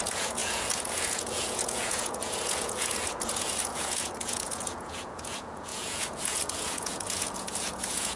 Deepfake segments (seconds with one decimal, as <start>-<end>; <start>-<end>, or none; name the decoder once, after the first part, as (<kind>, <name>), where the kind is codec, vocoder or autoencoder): 0.0-8.2 (vocoder, Vocos)